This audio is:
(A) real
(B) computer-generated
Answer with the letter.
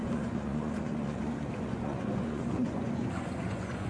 B